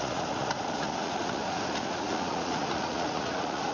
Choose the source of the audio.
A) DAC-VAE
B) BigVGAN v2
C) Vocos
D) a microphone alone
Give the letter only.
C